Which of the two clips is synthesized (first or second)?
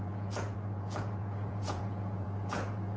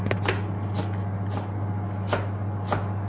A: first